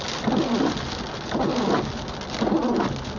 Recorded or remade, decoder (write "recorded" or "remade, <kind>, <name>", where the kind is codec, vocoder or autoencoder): recorded